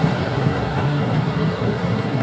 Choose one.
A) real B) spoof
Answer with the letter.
B